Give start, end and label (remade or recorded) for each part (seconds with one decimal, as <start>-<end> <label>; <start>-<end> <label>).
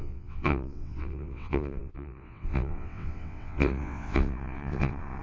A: 0.0-5.2 remade